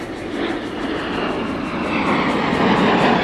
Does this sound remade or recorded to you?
recorded